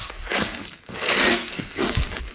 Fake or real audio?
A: fake